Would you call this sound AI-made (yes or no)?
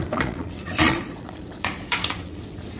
yes